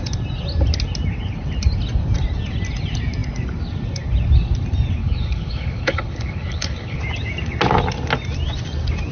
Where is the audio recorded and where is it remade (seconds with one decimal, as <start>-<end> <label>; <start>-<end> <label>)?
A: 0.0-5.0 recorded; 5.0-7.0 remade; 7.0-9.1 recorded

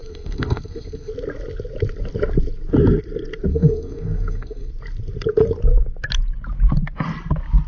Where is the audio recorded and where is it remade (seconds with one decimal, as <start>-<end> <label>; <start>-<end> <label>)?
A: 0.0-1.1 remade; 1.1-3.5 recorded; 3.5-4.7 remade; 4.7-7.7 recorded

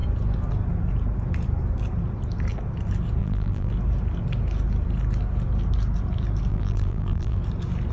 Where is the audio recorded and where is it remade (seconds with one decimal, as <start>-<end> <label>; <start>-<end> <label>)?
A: 0.0-3.2 recorded; 3.2-3.7 remade; 3.7-6.5 recorded; 6.5-7.4 remade; 7.4-7.9 recorded